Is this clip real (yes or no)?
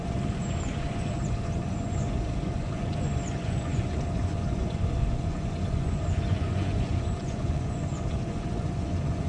no